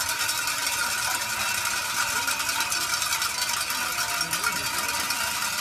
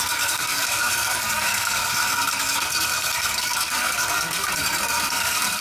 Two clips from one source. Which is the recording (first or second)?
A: first